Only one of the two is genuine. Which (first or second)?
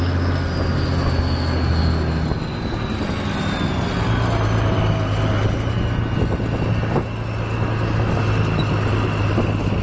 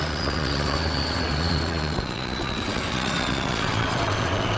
first